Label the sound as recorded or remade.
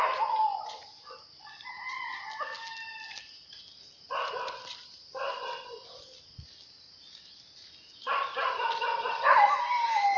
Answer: recorded